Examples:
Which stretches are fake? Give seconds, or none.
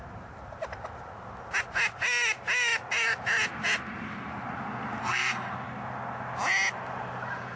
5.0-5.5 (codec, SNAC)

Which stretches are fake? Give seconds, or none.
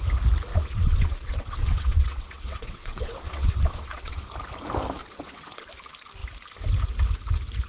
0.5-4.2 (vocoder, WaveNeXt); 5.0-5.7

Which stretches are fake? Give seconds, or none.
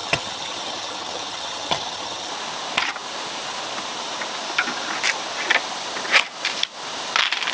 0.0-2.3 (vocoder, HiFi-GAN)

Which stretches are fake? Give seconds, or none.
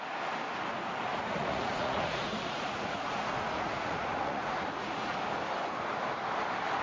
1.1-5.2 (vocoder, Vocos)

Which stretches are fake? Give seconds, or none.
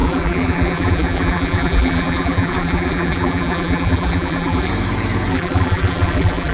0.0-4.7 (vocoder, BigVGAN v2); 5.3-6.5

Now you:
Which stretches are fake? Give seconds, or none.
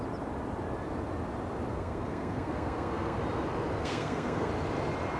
1.7-3.2 (codec, SNAC); 3.8-4.5